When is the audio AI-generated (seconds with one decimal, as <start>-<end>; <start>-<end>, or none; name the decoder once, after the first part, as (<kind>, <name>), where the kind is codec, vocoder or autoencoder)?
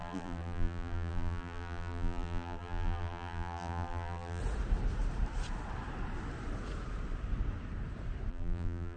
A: 0.0-4.4 (vocoder, BigVGAN v2); 8.3-9.0